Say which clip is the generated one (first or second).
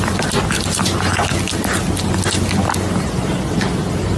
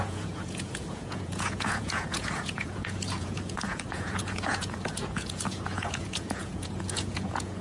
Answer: second